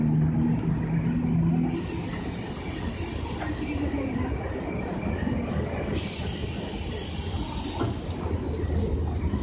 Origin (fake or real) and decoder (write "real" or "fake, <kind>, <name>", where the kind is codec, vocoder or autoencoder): real